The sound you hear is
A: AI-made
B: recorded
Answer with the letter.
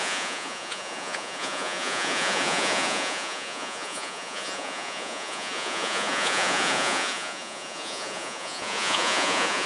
A